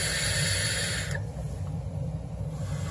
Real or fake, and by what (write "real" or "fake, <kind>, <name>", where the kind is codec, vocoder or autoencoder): real